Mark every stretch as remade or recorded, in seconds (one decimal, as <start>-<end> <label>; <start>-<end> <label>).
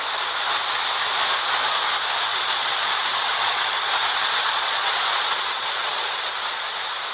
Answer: 0.0-2.3 recorded; 2.3-6.3 remade; 6.3-7.1 recorded